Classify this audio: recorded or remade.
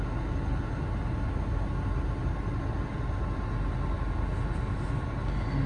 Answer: recorded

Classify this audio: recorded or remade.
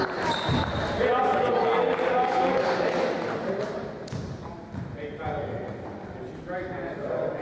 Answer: recorded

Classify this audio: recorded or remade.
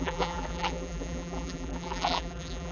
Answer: remade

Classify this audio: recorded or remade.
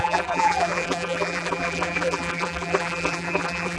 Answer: remade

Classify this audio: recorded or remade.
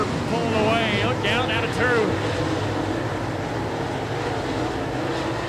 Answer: recorded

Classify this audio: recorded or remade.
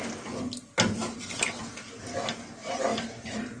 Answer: recorded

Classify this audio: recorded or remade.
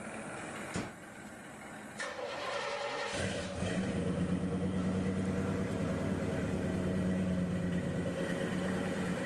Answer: remade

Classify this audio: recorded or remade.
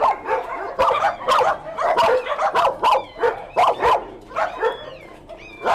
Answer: remade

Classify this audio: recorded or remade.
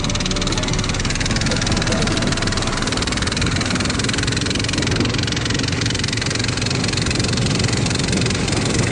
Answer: recorded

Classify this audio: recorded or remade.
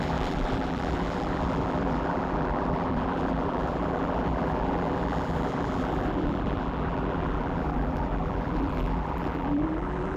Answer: remade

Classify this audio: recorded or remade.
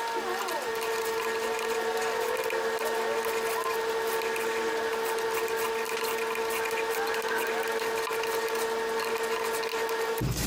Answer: recorded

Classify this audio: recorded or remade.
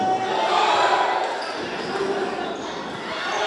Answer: recorded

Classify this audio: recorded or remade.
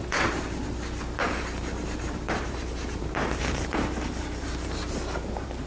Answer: remade